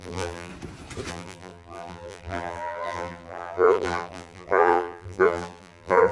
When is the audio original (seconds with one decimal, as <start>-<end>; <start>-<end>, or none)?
0.5-1.1